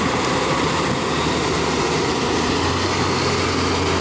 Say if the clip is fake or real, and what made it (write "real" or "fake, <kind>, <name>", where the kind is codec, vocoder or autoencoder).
real